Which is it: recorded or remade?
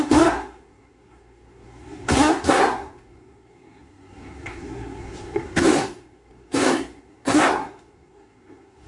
remade